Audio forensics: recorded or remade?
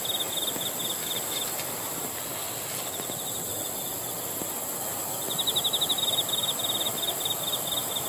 recorded